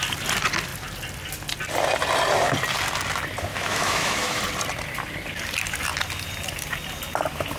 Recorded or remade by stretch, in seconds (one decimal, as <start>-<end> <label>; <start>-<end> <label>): 0.0-3.5 recorded; 3.5-4.4 remade; 4.4-7.6 recorded